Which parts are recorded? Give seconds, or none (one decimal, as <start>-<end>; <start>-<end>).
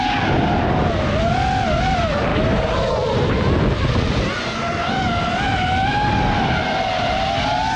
0.0-7.8